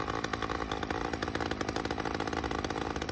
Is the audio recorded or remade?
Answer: recorded